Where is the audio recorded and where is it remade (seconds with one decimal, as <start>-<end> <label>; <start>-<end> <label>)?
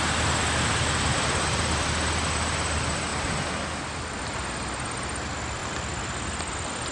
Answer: 0.0-6.9 recorded